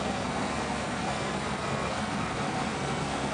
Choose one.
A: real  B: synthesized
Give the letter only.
B